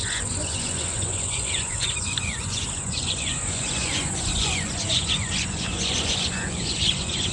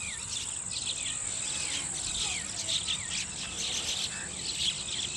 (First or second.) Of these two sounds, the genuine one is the second